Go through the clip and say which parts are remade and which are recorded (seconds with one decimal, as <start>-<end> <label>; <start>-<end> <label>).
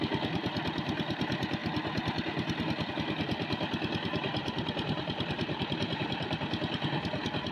0.0-4.4 recorded; 4.4-6.0 remade; 6.0-7.5 recorded